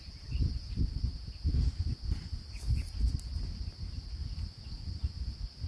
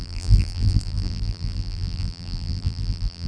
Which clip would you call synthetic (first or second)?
second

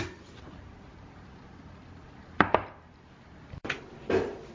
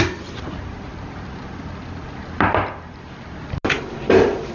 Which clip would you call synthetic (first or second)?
first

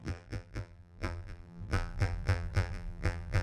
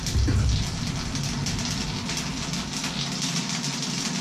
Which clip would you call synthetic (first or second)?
first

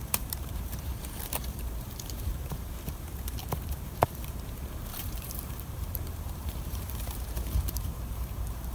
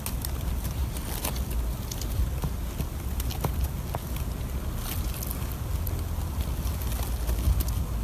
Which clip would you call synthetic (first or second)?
first